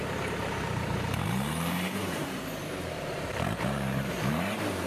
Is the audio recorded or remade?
remade